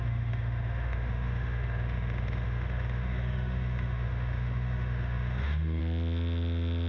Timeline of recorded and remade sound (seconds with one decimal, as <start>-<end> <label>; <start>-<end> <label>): 0.0-5.8 remade; 5.8-6.9 recorded

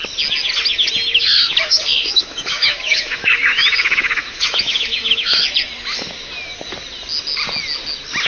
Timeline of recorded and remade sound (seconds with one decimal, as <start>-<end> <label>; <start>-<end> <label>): 0.0-1.1 recorded; 1.1-5.4 remade; 5.4-8.3 recorded

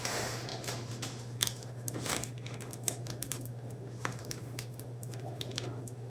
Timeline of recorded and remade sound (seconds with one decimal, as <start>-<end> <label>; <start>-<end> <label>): 0.0-6.1 remade

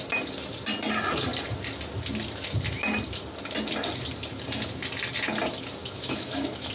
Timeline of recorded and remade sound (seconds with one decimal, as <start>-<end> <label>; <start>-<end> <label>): 0.0-5.8 recorded; 5.8-6.7 remade

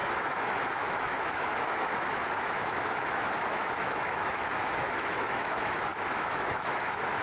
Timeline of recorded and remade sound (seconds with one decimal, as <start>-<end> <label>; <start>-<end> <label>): 0.0-7.2 remade

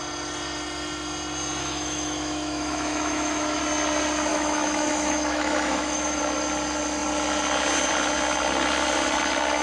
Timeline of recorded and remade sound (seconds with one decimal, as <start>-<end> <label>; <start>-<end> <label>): 0.0-1.6 recorded; 1.6-3.6 remade; 3.6-4.3 recorded; 4.3-6.2 remade; 6.2-9.6 recorded

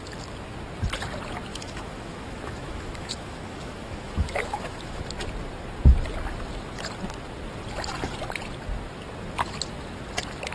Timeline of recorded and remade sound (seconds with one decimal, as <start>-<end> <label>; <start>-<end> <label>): 0.0-1.5 recorded; 1.5-5.0 remade; 5.0-10.5 recorded